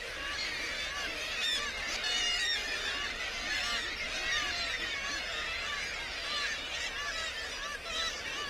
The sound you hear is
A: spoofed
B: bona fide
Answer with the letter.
B